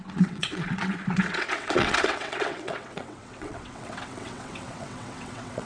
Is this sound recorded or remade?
remade